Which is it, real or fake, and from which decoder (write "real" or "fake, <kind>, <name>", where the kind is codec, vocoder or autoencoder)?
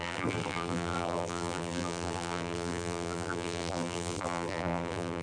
fake, vocoder, BigVGAN v2